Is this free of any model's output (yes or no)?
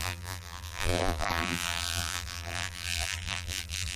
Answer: no